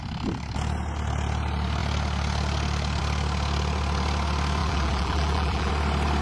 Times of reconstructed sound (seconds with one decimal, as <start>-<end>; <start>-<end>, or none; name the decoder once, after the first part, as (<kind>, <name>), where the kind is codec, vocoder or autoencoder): 4.6-5.7 (vocoder, BigVGAN v2)